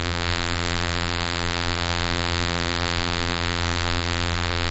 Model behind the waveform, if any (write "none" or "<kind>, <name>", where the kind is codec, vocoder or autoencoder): vocoder, BigVGAN v2